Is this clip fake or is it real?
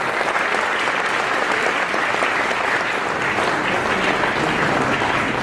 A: real